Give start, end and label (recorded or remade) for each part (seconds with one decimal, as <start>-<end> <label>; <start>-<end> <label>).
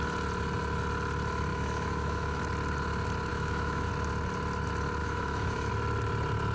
0.0-1.5 recorded; 1.5-2.4 remade; 2.4-3.3 recorded; 3.3-3.9 remade; 3.9-5.0 recorded; 5.0-5.7 remade; 5.7-6.5 recorded